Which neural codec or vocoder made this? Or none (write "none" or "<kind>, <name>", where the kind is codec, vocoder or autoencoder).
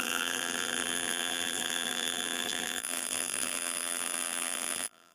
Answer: vocoder, BigVGAN v2